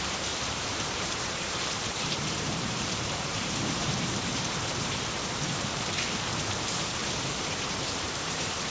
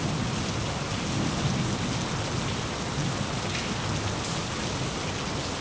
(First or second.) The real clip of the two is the second